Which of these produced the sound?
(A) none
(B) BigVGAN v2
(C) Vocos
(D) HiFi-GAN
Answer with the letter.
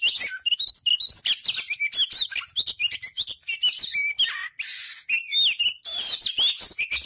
A